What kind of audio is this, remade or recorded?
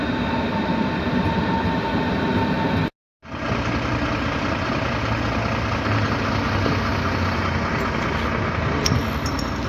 recorded